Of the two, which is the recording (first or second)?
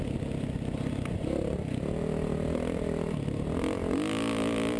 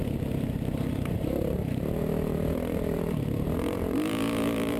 first